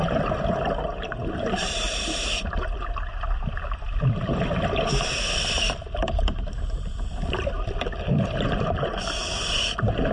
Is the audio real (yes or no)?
no